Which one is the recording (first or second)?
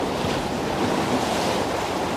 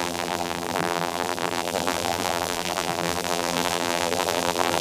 first